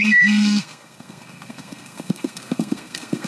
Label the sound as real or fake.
fake